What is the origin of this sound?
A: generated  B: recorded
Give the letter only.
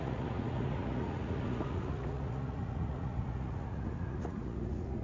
A